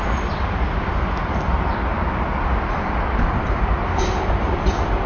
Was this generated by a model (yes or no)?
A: no